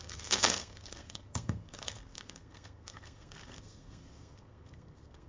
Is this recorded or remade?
remade